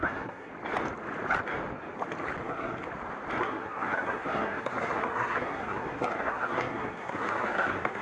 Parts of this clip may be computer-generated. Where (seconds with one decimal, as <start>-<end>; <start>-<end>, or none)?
0.0-0.5; 2.4-2.8; 3.4-8.0